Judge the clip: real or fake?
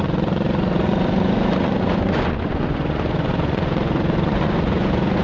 fake